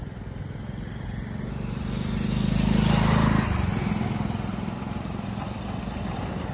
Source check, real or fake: real